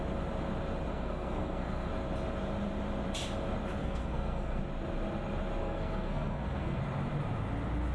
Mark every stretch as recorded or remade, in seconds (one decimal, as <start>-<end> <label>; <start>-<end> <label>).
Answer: 0.0-0.9 recorded; 0.9-1.9 remade; 1.9-3.8 recorded; 3.8-4.6 remade; 4.6-5.6 recorded; 5.6-6.8 remade; 6.8-7.9 recorded